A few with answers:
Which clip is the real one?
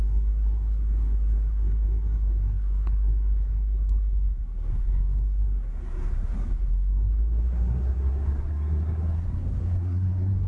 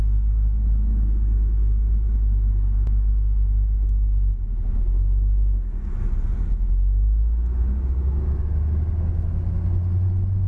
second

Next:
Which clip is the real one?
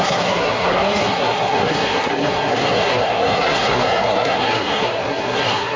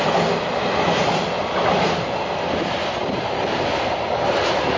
second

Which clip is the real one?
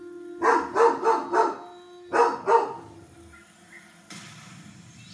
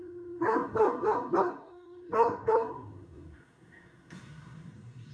first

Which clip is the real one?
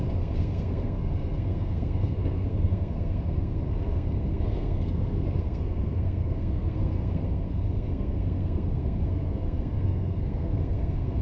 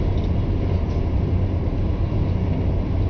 second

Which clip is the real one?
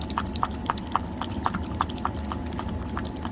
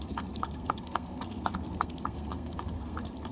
first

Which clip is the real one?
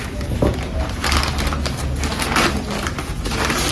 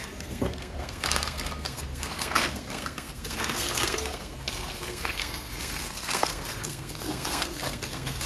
first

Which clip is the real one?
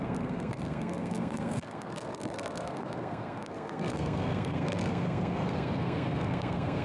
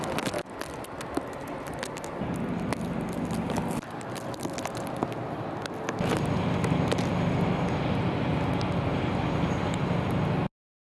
second